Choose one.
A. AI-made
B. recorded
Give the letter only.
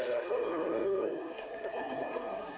A